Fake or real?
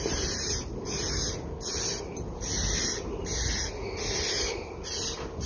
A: real